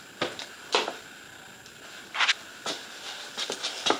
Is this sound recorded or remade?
recorded